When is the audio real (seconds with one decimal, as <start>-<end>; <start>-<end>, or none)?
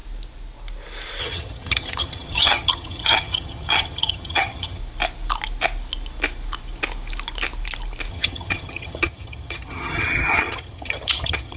0.0-1.2; 4.8-8.1